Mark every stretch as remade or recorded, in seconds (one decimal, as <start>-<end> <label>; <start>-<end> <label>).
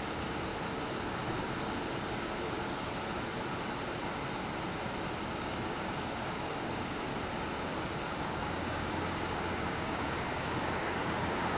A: 0.0-0.5 remade; 0.5-5.4 recorded; 5.4-7.1 remade; 7.1-8.0 recorded; 8.0-11.6 remade